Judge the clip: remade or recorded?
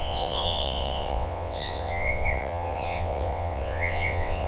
remade